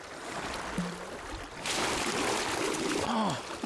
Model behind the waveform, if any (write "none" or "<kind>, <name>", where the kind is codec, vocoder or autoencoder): none